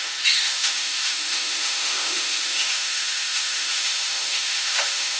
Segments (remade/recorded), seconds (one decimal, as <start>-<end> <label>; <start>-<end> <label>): 0.0-5.2 remade